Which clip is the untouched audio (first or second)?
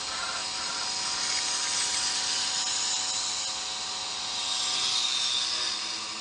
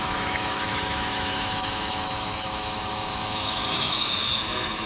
first